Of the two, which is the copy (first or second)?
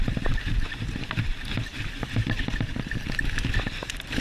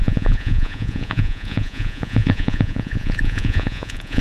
second